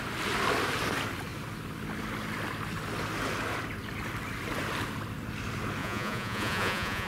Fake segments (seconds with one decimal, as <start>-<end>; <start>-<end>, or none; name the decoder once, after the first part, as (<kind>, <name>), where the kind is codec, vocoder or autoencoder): 5.8-7.1 (vocoder, Vocos)